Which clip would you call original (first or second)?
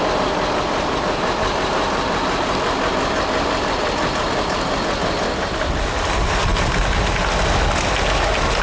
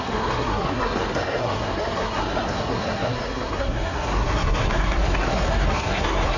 first